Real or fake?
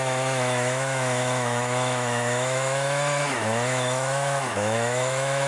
fake